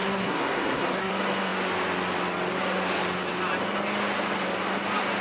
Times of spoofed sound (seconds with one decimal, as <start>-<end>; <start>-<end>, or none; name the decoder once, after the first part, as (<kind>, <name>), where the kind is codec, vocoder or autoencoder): 0.0-1.1 (codec, SNAC)